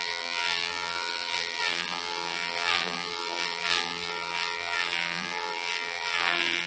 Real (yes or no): no